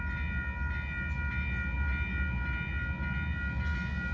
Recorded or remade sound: recorded